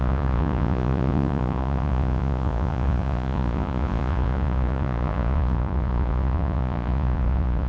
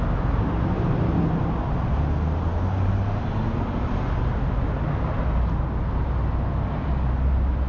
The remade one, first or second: first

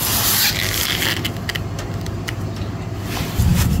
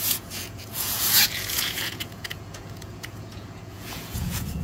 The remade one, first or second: second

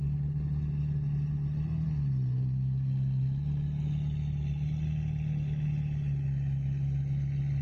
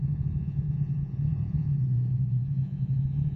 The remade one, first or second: second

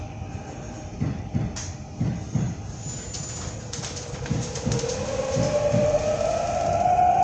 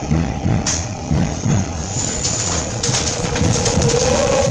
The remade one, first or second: second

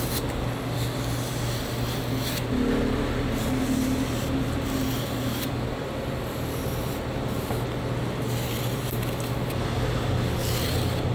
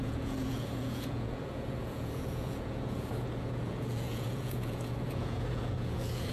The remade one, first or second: second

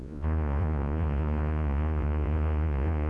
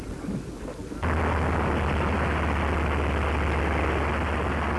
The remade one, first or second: first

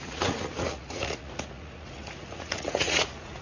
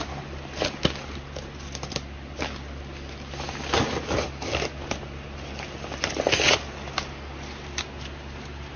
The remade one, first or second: first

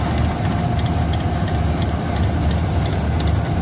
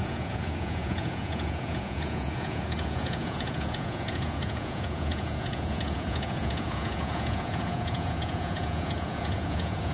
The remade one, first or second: second